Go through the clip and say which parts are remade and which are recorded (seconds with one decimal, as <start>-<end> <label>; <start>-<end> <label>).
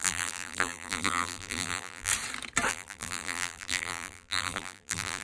0.0-2.1 remade; 2.1-2.7 recorded; 2.7-5.2 remade